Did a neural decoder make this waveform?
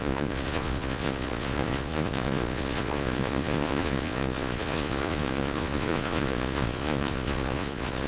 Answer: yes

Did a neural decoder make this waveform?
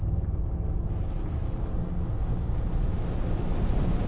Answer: no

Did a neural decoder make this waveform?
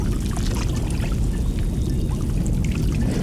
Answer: no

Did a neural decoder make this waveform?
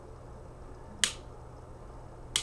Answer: no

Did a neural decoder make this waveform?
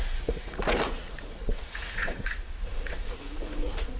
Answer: yes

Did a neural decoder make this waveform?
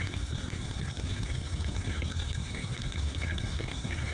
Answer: yes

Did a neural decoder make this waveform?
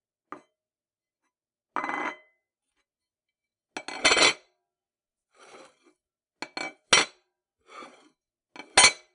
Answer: no